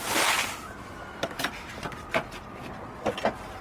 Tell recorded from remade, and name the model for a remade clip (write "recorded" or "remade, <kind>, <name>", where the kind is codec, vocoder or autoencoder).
recorded